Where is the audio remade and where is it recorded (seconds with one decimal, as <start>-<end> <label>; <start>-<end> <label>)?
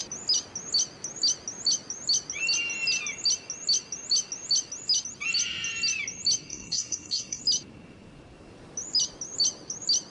0.0-6.5 recorded; 6.5-7.4 remade; 7.4-10.1 recorded